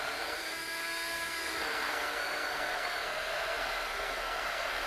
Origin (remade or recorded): remade